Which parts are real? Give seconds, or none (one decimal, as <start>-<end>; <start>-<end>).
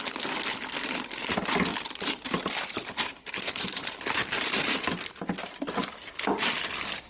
0.0-1.7; 3.5-7.1